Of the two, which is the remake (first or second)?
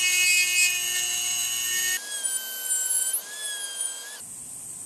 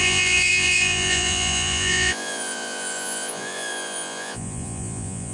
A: second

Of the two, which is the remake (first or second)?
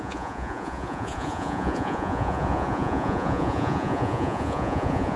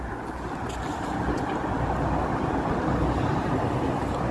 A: first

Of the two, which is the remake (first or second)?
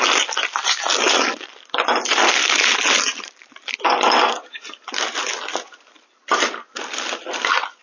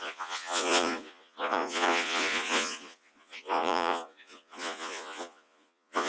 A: second